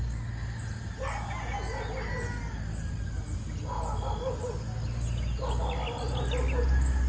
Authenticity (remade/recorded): recorded